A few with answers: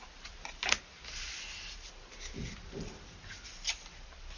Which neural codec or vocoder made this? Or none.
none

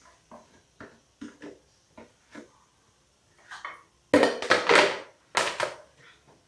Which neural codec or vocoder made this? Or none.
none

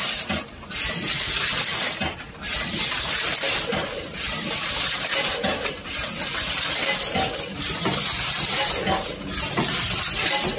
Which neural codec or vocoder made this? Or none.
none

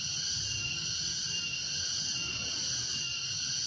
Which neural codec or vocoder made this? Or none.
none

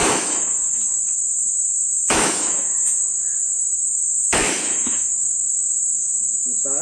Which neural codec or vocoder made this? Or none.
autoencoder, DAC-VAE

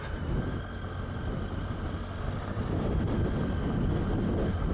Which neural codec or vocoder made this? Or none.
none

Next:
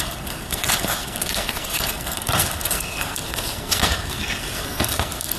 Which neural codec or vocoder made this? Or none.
codec, SNAC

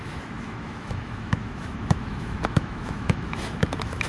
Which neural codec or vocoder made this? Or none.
autoencoder, DAC-VAE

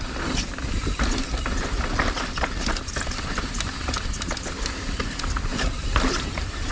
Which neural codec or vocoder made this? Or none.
none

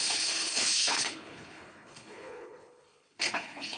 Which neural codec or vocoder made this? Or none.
codec, HILCodec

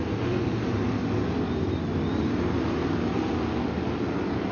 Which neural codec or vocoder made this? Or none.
none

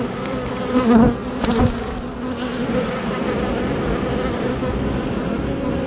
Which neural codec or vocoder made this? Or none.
none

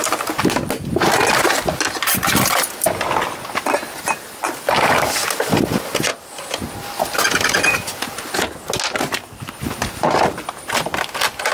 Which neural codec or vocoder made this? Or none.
none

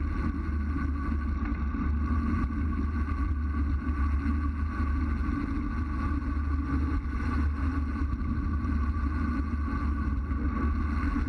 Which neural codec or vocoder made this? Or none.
none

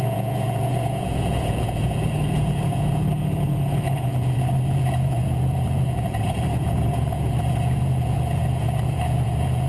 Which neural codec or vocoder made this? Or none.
vocoder, Vocos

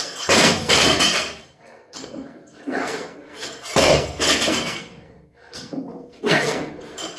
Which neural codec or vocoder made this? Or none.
codec, SNAC